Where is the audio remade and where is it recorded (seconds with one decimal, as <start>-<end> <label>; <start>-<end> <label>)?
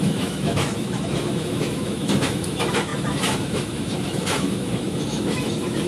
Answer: 0.0-5.9 remade